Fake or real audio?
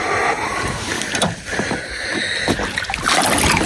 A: real